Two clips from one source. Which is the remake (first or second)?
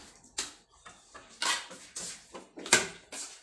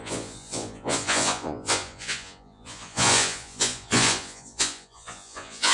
second